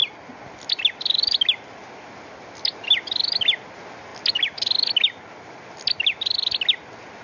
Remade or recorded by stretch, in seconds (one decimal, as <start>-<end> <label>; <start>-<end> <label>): 0.0-7.2 recorded